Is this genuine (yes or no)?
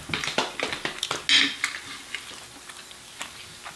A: yes